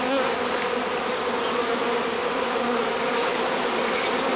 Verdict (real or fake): real